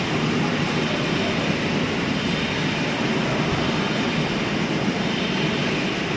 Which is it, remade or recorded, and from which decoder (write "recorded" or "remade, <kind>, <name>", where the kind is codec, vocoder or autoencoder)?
recorded